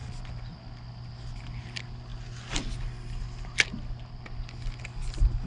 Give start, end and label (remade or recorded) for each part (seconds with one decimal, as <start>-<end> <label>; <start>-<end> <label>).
0.0-5.5 recorded